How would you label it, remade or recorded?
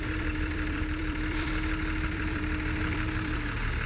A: remade